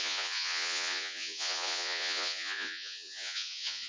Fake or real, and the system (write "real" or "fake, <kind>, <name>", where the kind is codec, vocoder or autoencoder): fake, vocoder, Vocos